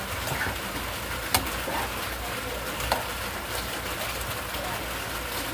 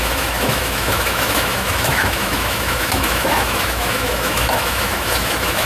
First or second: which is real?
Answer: first